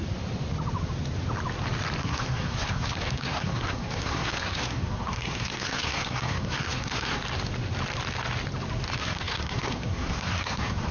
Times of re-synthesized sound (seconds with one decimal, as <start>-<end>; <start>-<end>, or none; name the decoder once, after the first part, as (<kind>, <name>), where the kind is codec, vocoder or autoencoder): 2.0-7.2 (codec, SNAC); 9.0-10.9